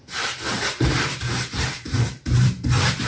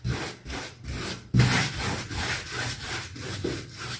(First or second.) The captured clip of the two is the second